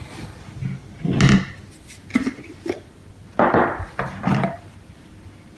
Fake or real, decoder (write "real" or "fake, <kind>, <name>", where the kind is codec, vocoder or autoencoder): real